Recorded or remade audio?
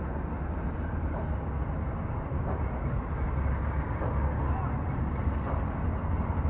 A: recorded